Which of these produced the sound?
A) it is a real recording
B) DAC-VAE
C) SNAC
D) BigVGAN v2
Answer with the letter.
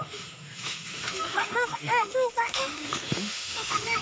B